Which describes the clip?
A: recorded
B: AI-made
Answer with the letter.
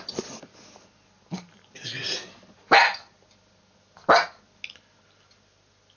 A